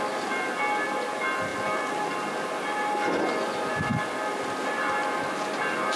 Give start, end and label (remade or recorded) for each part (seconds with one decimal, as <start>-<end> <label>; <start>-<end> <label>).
0.0-6.0 recorded